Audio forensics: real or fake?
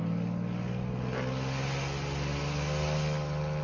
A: real